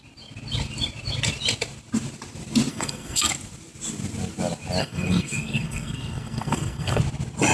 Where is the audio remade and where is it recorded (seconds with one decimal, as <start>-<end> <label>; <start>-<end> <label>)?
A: 0.0-2.7 recorded; 2.7-3.3 remade; 3.3-4.8 recorded; 4.8-7.0 remade; 7.0-7.5 recorded